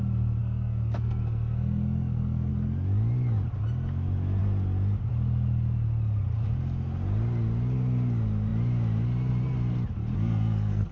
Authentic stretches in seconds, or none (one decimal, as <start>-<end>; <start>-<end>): 0.0-0.4; 2.5-10.1